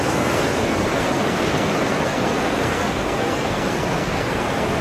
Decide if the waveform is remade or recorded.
remade